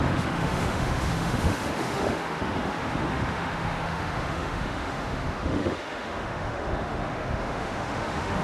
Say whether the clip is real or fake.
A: fake